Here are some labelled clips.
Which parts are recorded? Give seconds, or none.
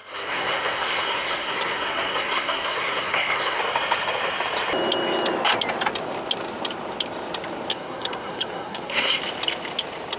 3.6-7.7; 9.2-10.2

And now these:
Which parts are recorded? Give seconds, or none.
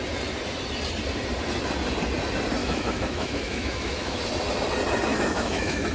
0.0-2.6; 4.2-5.1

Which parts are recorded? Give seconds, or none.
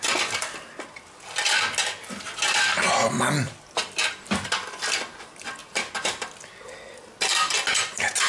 0.0-5.6; 6.1-8.3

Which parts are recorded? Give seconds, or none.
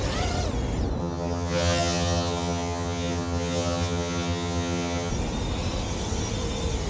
0.0-1.0; 5.1-6.9